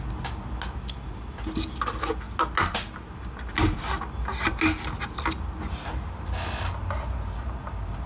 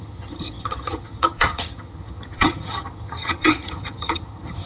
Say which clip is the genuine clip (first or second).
first